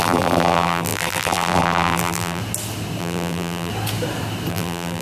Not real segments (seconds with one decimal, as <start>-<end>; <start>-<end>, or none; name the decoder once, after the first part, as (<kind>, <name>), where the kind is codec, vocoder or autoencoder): 0.0-2.4 (vocoder, BigVGAN v2); 3.0-3.7; 4.5-5.0